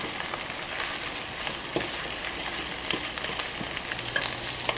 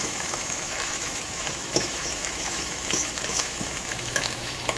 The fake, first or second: second